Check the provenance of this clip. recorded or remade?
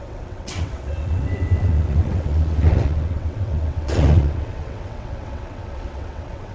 remade